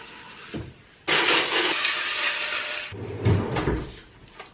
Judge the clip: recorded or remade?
recorded